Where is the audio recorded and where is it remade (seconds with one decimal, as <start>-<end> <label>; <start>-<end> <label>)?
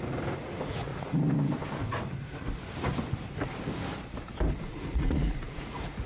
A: 0.0-0.9 remade; 0.9-4.6 recorded; 4.6-6.1 remade